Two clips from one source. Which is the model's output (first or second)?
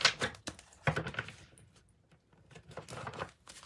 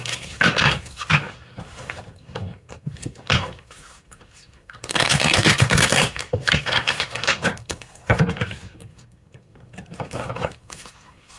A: second